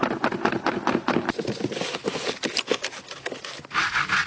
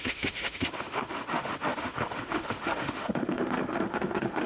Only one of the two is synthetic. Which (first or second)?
second